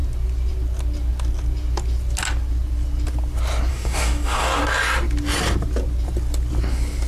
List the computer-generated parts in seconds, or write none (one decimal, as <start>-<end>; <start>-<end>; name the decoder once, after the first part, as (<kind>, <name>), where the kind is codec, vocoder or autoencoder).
3.7-4.6 (codec, DAC)